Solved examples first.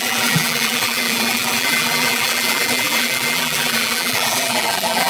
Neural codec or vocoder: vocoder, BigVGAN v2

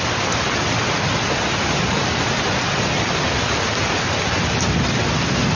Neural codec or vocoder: none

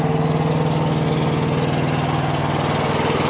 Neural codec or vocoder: none